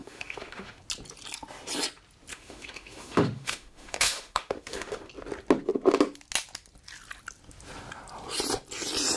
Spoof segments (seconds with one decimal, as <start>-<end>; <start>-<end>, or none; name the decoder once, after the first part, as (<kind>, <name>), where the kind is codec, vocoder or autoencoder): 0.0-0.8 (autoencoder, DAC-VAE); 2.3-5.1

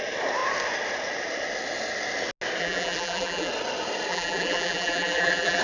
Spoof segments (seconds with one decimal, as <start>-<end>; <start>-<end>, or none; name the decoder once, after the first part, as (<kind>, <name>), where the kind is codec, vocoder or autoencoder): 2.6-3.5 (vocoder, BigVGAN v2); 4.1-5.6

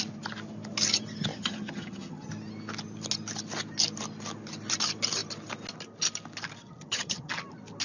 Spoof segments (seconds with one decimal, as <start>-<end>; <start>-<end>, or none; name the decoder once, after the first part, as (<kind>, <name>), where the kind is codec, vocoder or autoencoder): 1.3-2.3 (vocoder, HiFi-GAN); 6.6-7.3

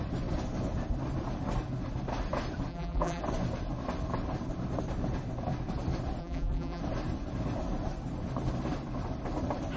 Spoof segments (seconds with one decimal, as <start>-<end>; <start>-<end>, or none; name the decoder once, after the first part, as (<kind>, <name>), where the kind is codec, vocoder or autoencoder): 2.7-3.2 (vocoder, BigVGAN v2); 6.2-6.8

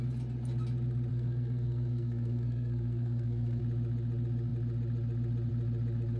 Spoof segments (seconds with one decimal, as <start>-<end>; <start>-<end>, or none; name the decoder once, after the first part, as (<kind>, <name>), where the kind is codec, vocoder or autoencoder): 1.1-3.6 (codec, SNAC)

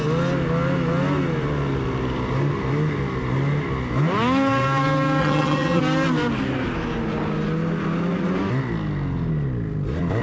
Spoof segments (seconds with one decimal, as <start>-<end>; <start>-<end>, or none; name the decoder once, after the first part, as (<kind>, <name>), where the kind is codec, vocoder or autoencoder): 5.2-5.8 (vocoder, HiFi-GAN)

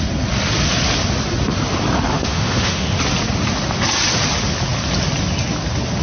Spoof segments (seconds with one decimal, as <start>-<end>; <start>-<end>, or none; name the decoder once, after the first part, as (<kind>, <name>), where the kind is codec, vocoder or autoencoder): 2.1-3.0 (autoencoder, DAC-VAE)

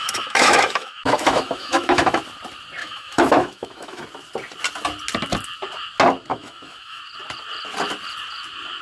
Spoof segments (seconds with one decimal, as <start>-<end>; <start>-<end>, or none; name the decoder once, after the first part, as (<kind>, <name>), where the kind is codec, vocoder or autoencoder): 0.0-2.2 (autoencoder, DAC-VAE); 2.8-4.0; 6.3-7.0